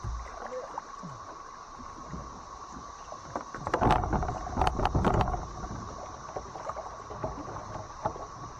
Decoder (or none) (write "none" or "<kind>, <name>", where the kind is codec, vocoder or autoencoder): none